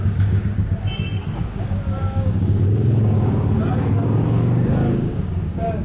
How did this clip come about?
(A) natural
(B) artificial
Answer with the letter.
B